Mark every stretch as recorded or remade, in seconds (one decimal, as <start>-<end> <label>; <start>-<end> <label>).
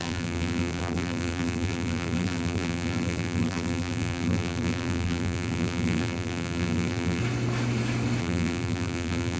0.0-7.2 remade; 7.2-8.2 recorded; 8.2-9.4 remade